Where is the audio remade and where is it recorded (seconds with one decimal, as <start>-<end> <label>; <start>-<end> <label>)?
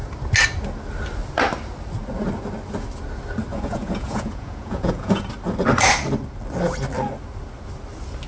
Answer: 0.0-3.5 recorded; 3.5-5.2 remade; 5.2-8.3 recorded